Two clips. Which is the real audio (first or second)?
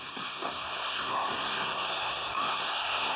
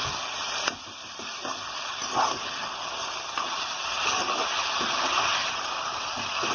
second